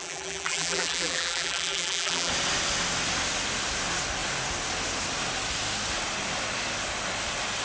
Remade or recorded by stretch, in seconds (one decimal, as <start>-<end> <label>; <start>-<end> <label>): 0.0-2.3 remade; 2.3-7.6 recorded